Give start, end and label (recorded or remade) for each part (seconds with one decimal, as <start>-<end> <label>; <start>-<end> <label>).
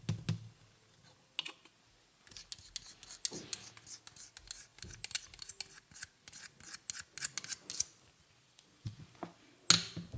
0.0-8.2 recorded; 8.2-9.0 remade; 9.0-10.2 recorded